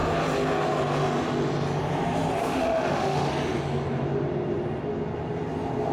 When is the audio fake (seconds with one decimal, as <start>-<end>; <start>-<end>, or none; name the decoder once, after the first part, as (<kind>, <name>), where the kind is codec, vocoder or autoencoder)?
2.4-3.3 (autoencoder, DAC-VAE)